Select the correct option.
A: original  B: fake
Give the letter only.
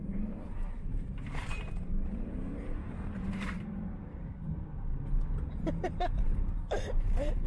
B